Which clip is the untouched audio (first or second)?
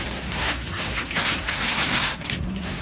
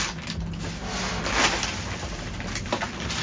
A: second